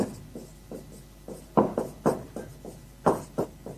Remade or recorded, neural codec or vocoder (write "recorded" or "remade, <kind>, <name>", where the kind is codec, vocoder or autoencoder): recorded